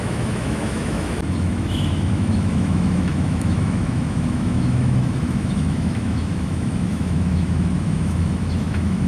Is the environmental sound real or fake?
fake